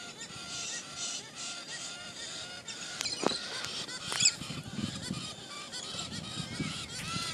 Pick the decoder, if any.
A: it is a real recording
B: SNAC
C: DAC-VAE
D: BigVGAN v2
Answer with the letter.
A